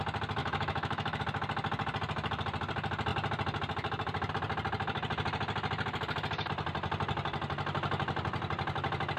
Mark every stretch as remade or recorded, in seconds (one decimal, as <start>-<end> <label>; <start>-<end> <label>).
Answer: 0.0-0.4 recorded; 0.4-1.2 remade; 1.2-9.2 recorded